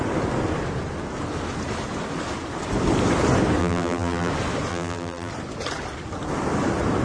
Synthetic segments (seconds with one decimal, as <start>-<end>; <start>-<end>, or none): 3.6-4.3; 4.7-5.3